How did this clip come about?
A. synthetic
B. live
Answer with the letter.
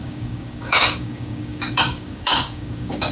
A